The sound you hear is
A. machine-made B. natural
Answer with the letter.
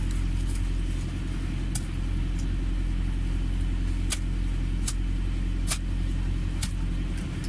B